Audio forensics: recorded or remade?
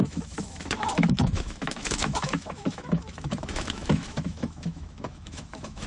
remade